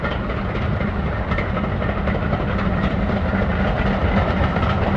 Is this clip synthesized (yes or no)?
no